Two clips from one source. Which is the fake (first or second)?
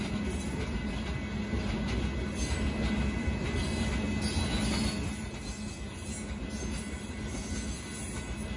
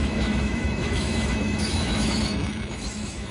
second